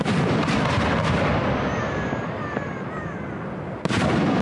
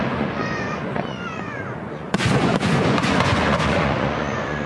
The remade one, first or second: second